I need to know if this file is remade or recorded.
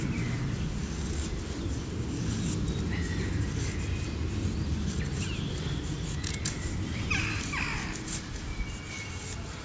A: recorded